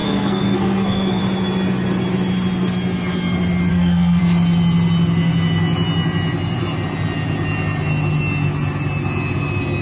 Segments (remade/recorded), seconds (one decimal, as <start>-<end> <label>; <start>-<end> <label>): 0.0-1.2 remade; 1.2-3.7 recorded; 3.7-4.2 remade; 4.2-9.8 recorded